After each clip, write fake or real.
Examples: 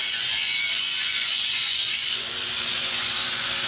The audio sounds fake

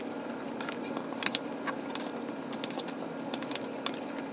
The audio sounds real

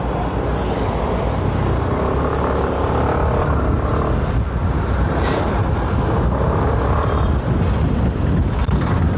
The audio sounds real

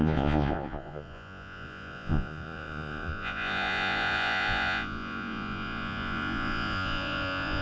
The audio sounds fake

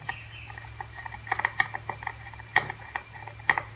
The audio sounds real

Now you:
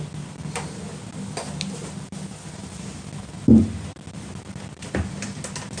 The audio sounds real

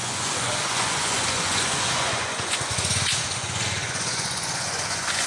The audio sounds fake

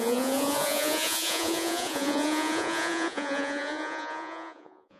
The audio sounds fake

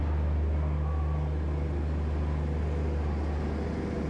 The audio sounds real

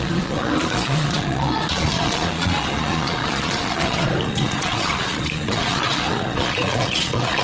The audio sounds fake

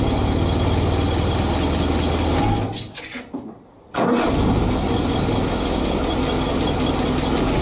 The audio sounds real